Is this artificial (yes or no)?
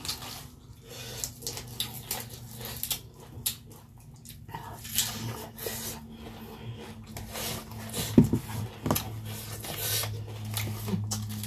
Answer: no